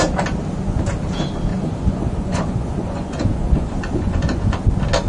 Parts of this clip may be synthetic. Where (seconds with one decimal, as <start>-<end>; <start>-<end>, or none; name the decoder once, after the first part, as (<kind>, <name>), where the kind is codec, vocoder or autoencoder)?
1.5-4.6 (vocoder, Vocos)